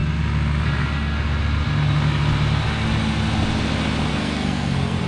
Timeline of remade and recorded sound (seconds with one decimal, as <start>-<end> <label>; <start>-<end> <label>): 0.0-4.1 recorded; 4.1-5.1 remade